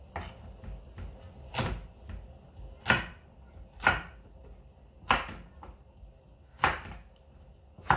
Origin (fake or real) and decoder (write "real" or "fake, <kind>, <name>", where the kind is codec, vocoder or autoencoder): real